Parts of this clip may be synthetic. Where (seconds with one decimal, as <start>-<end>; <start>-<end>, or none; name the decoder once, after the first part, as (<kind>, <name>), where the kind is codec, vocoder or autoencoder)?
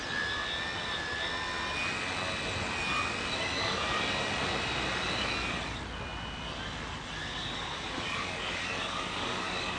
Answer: 7.2-9.8 (codec, DAC)